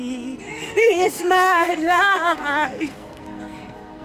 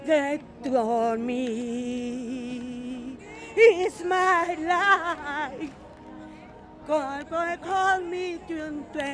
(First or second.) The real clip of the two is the second